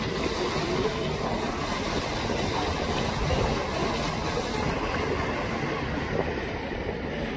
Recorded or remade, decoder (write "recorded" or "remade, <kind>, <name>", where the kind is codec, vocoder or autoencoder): recorded